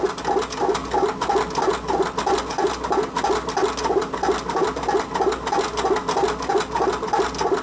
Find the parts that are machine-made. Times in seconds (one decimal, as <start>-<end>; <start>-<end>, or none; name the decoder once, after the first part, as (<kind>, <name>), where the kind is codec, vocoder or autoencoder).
none